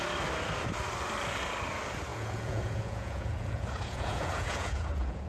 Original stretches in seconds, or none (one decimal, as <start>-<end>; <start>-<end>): 0.0-2.1